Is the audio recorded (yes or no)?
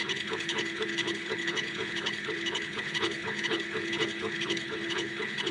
no